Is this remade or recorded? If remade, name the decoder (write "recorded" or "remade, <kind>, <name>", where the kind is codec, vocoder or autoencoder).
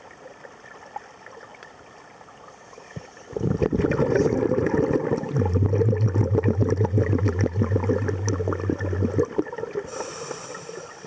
recorded